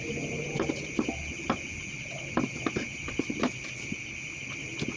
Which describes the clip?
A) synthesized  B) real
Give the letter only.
B